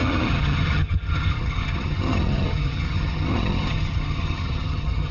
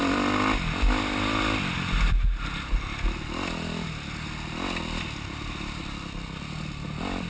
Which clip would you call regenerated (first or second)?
first